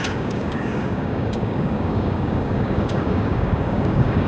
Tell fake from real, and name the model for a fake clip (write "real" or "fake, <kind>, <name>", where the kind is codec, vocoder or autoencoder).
fake, codec, DAC